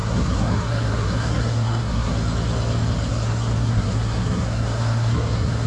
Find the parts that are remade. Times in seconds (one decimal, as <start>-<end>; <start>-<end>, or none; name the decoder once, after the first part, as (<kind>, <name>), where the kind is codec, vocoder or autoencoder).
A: 0.0-2.1 (codec, SNAC); 3.1-5.7